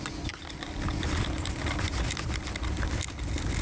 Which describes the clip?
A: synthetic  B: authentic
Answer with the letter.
B